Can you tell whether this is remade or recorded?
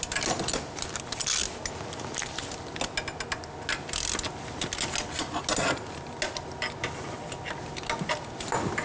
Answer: recorded